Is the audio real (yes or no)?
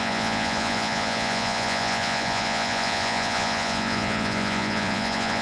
no